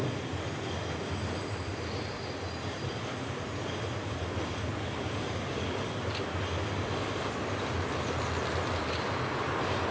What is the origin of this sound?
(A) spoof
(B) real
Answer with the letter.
B